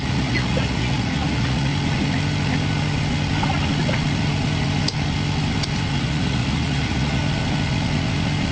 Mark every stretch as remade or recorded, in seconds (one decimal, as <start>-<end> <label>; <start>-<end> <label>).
0.0-1.7 remade; 1.7-5.9 recorded; 5.9-7.2 remade; 7.2-8.5 recorded